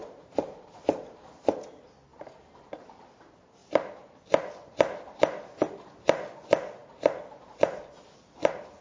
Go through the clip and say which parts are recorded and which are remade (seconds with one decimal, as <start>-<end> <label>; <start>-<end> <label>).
0.0-1.5 remade; 1.5-2.1 recorded; 2.1-3.0 remade; 3.0-8.8 recorded